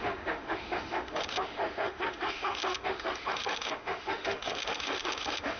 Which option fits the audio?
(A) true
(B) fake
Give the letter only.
B